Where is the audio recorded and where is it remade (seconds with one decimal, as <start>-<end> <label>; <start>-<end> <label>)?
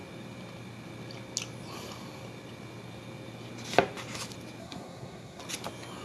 0.0-4.6 recorded; 4.6-5.4 remade; 5.4-6.0 recorded